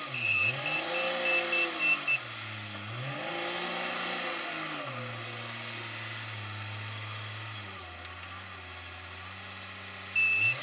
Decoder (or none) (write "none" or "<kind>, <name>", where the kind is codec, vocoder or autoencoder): none